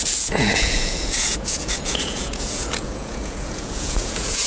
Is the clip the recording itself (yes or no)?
no